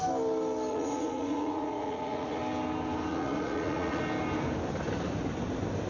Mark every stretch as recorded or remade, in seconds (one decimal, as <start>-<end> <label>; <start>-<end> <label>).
0.0-0.7 recorded; 0.7-2.4 remade; 2.4-3.1 recorded; 3.1-4.0 remade; 4.0-5.9 recorded